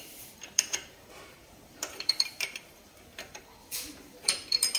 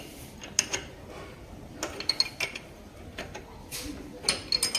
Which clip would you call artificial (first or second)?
first